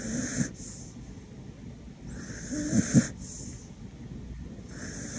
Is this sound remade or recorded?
recorded